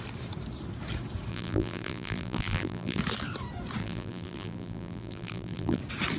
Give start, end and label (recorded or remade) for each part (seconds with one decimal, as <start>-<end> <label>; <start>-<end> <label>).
0.0-1.3 recorded; 1.3-3.0 remade; 3.0-3.8 recorded; 3.8-5.8 remade; 5.8-6.2 recorded